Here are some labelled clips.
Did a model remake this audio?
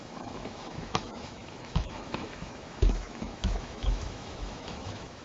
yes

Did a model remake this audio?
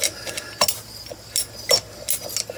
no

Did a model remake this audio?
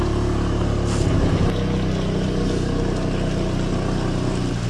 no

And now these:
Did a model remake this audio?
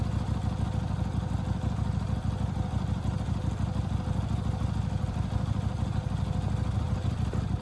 no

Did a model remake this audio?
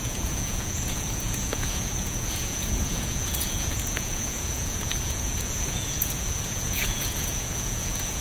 yes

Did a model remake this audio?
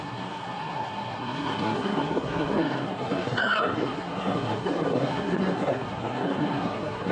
yes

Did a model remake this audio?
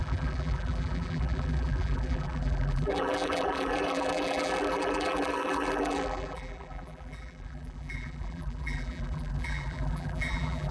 yes